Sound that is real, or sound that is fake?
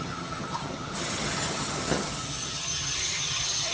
fake